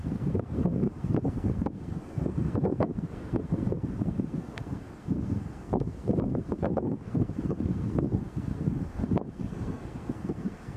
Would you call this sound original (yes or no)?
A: no